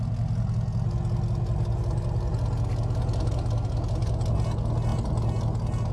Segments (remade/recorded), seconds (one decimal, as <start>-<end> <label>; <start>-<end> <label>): 0.0-5.9 recorded